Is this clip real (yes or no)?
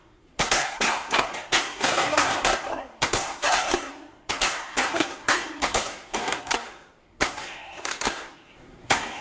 no